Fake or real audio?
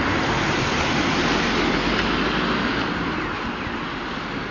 real